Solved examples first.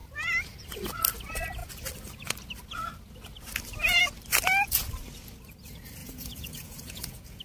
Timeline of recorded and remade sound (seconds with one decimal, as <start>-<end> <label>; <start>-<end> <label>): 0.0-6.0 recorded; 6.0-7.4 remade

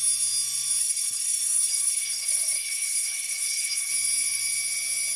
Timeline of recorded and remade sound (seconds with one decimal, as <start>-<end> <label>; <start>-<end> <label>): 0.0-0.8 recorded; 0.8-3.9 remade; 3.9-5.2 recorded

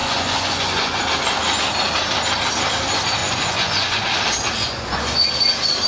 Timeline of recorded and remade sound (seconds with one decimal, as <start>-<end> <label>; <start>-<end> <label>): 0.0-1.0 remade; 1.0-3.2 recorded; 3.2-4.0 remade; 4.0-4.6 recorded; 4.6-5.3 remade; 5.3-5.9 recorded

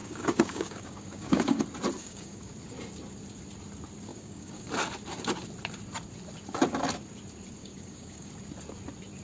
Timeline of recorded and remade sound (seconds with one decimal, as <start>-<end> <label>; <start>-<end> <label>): 0.0-1.6 remade; 1.6-2.0 recorded; 2.0-2.5 remade; 2.5-4.1 recorded; 4.1-4.7 remade; 4.7-7.6 recorded; 7.6-8.3 remade; 8.3-9.2 recorded

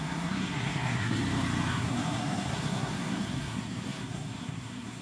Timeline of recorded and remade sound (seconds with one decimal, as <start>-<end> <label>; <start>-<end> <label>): 0.0-1.2 remade; 1.2-1.7 recorded; 1.7-5.0 remade

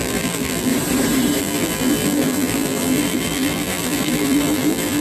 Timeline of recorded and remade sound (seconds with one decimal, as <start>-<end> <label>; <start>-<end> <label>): 0.0-0.7 remade; 0.7-1.4 recorded; 1.4-5.0 remade